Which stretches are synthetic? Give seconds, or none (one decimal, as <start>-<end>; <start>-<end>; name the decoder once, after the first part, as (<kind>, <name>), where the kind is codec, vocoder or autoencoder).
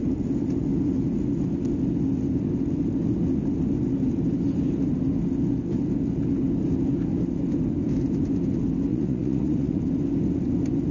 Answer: 8.9-9.8 (vocoder, Vocos)